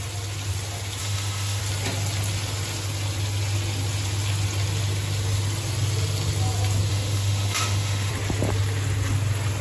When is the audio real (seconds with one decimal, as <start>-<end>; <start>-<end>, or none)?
0.0-1.0; 1.6-6.9; 8.1-9.6